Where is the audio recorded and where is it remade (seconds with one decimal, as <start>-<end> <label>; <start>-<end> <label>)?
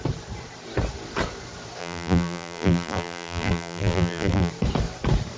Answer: 0.0-1.8 recorded; 1.8-4.5 remade; 4.5-5.4 recorded